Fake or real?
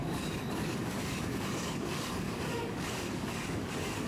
fake